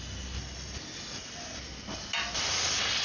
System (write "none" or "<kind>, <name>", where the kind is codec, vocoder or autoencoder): none